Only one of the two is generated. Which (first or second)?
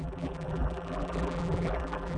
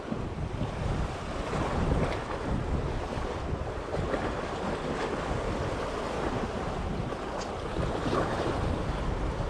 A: first